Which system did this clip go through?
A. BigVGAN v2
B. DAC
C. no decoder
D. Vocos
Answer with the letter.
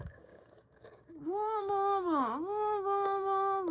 B